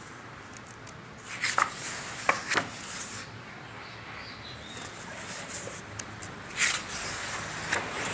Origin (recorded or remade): recorded